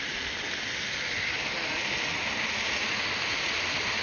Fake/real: real